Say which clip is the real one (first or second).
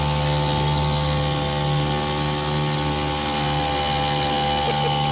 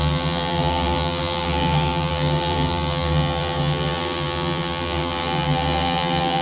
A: first